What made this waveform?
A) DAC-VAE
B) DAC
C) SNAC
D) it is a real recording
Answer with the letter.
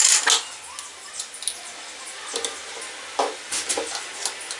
D